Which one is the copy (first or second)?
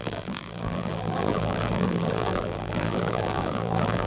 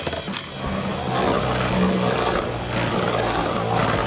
first